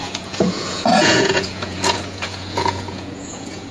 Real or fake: fake